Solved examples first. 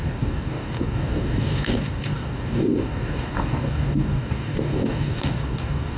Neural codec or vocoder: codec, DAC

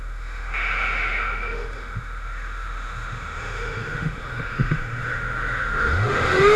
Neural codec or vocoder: autoencoder, DAC-VAE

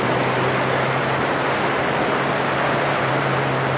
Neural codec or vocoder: none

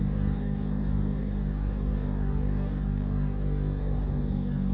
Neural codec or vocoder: codec, DAC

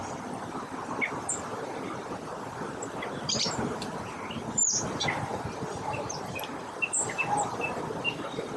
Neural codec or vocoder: vocoder, BigVGAN v2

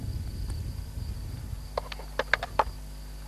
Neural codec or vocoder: none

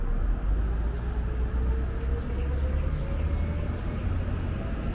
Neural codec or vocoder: none